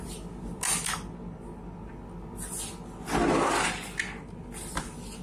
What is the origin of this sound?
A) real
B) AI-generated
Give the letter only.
A